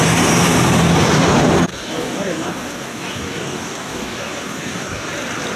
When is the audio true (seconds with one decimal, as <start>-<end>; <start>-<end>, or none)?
0.0-1.7; 5.1-5.6